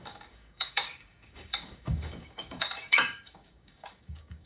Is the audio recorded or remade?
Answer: remade